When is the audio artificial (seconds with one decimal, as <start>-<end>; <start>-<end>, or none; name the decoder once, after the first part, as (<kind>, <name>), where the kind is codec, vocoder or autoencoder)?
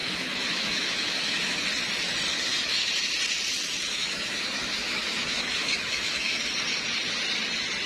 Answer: 0.0-1.6 (autoencoder, DAC-VAE); 2.3-2.9; 3.9-6.4